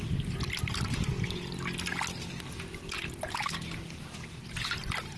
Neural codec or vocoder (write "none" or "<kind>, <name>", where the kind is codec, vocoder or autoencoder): none